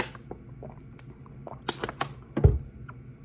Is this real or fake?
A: real